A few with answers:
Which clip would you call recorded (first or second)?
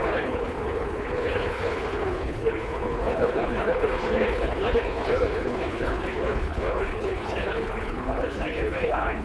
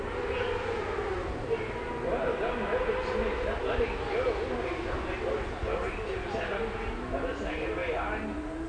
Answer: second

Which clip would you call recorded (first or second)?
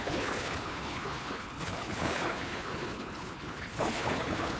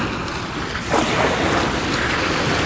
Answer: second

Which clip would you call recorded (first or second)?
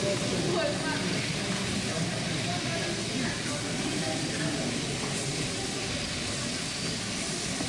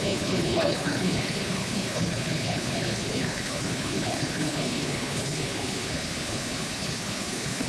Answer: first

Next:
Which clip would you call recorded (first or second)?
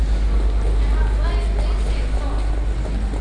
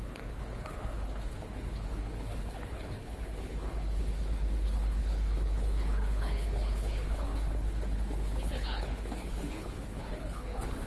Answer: first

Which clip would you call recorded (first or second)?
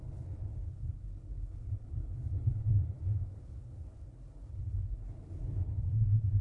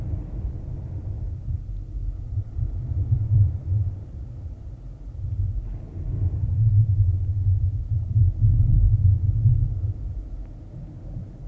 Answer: second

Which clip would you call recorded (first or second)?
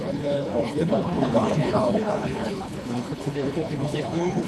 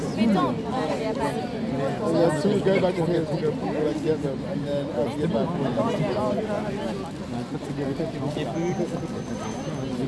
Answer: second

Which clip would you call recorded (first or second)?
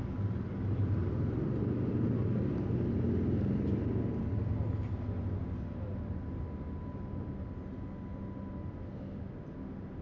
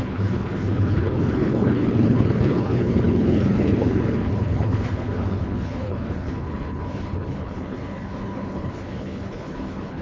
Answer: first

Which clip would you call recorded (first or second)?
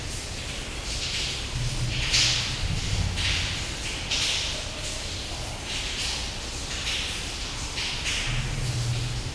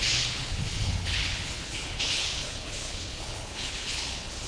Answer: first